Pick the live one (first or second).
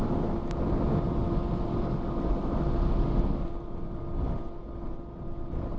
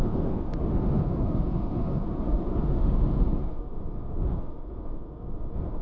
first